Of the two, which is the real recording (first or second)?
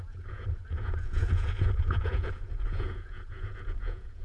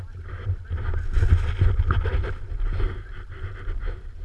second